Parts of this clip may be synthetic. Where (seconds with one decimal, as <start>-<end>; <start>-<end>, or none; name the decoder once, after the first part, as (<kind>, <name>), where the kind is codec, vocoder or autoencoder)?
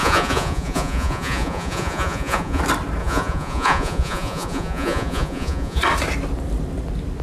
0.0-2.6 (vocoder, Vocos); 3.0-5.8